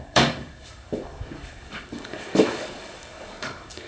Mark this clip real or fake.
fake